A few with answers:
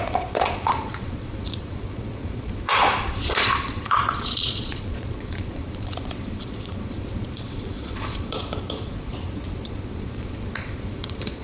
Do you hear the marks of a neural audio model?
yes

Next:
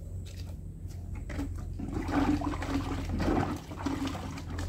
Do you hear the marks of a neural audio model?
no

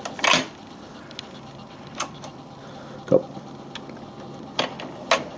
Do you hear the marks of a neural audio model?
no